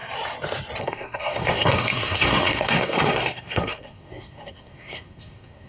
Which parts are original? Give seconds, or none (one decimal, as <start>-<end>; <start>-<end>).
0.0-0.8